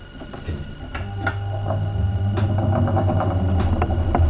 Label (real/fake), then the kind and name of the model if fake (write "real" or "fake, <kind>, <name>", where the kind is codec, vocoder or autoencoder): real